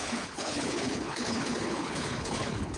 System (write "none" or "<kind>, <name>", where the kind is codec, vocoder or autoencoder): codec, HILCodec